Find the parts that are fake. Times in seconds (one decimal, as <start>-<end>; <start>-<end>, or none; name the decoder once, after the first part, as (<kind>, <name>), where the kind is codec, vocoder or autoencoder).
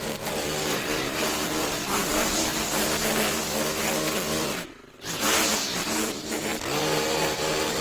0.0-2.5 (vocoder, BigVGAN v2); 4.9-7.8